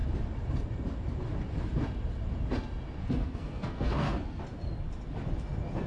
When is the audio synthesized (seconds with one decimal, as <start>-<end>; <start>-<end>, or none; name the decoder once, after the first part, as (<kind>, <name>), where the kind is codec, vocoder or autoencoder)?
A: 3.0-4.4 (codec, SNAC)